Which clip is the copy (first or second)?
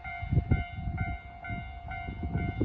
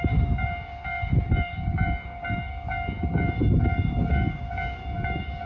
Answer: second